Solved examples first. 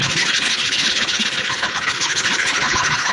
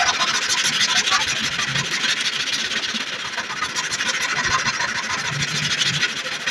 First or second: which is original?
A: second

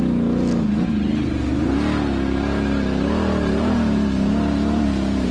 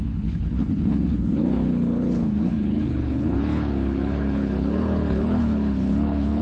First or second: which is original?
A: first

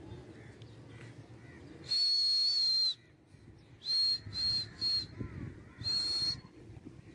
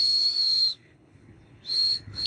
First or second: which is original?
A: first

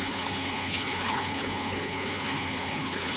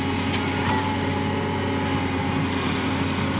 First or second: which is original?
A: second